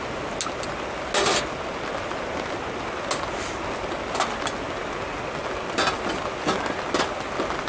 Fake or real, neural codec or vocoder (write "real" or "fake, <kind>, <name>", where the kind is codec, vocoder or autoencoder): real